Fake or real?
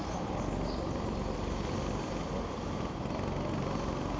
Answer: real